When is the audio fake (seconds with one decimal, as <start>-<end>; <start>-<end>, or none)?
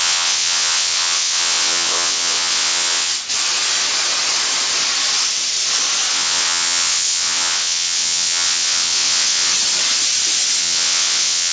0.0-3.1; 6.1-9.5; 10.6-11.5